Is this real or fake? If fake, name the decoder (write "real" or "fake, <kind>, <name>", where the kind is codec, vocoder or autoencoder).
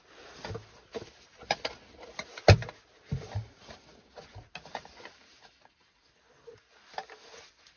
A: real